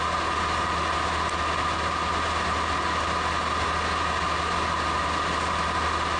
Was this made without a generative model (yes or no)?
yes